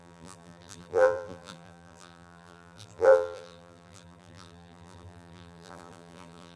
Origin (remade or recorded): remade